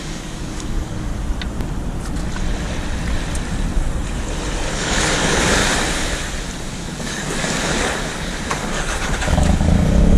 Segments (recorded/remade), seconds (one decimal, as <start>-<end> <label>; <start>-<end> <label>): 0.0-1.1 remade; 1.1-4.7 recorded; 4.7-5.6 remade; 5.6-6.7 recorded; 6.7-10.2 remade